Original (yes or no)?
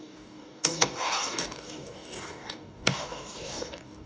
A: no